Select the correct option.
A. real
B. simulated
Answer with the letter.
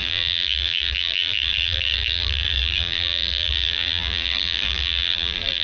B